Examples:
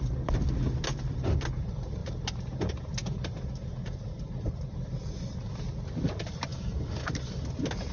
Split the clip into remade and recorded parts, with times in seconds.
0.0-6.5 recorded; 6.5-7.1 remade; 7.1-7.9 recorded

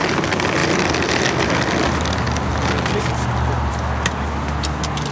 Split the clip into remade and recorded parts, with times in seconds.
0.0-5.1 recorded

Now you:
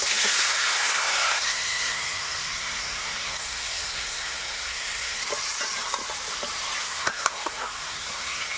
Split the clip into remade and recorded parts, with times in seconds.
0.0-5.3 remade; 5.3-6.8 recorded; 6.8-8.6 remade

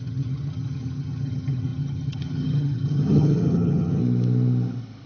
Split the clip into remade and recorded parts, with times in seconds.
0.0-4.0 remade; 4.0-5.1 recorded

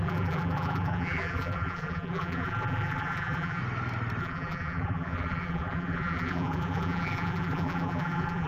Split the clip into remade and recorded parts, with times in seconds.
0.0-3.6 remade; 3.6-4.2 recorded; 4.2-8.5 remade

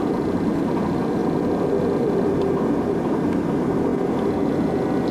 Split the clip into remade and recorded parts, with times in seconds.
0.0-1.2 remade; 1.2-2.0 recorded; 2.0-3.9 remade; 3.9-5.1 recorded

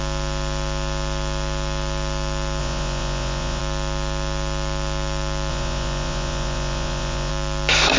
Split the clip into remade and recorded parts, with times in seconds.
0.0-2.6 recorded; 2.6-3.6 remade; 3.6-5.5 recorded; 5.5-7.3 remade; 7.3-8.0 recorded